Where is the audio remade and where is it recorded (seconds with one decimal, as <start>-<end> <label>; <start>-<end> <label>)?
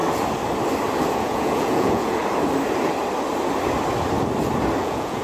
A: 0.0-1.1 recorded; 1.1-2.2 remade; 2.2-4.8 recorded; 4.8-5.2 remade